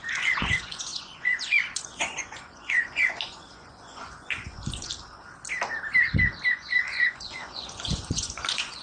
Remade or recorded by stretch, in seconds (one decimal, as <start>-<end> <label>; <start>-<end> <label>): 0.0-4.9 remade; 4.9-6.5 recorded; 6.5-8.8 remade